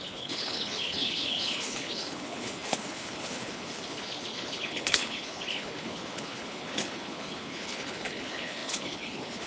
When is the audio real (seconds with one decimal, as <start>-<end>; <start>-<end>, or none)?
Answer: none